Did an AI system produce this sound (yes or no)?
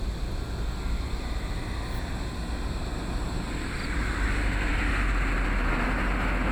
no